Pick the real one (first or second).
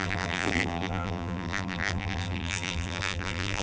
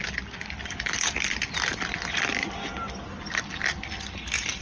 second